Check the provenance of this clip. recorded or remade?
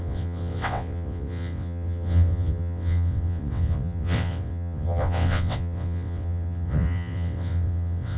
remade